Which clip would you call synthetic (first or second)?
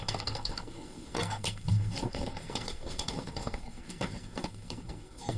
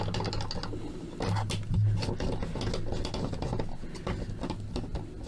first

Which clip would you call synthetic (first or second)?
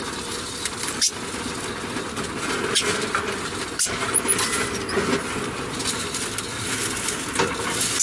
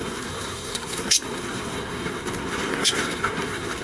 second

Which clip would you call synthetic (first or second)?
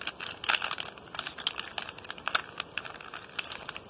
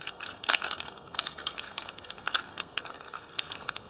second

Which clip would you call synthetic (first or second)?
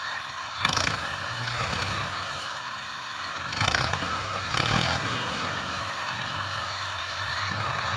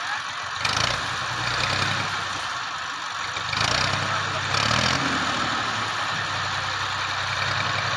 first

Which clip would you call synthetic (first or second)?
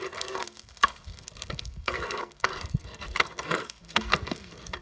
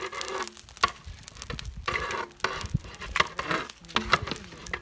first